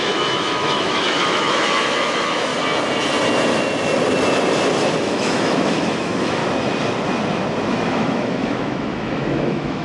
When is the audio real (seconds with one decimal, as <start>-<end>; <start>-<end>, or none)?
2.5-5.0; 6.4-7.7